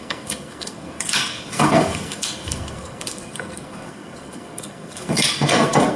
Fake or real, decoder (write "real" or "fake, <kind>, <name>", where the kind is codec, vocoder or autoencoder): fake, codec, SNAC